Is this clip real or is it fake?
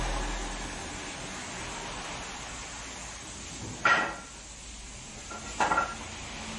real